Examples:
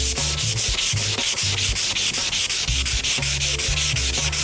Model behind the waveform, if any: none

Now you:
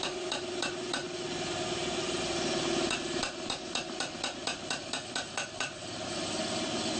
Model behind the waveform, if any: none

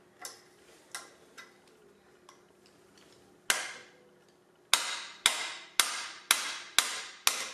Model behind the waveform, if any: none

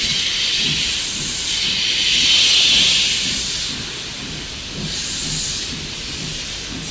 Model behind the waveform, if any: none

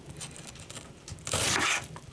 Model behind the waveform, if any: none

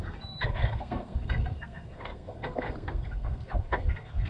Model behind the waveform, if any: codec, SNAC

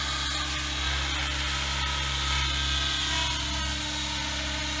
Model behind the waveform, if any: none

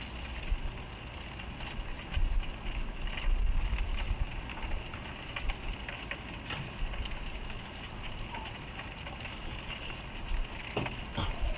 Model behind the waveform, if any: none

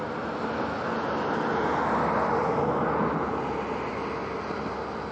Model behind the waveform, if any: none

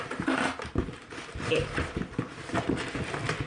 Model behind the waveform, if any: none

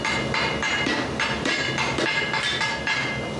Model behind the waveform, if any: none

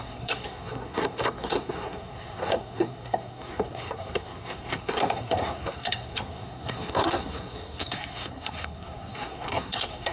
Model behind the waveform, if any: codec, SNAC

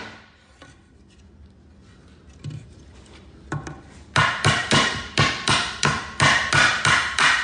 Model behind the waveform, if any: none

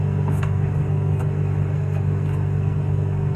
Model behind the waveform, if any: codec, SNAC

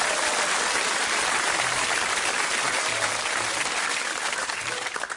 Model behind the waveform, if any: none